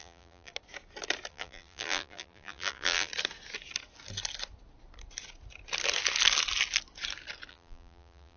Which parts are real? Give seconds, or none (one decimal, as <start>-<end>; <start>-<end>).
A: 0.5-1.3; 3.1-7.5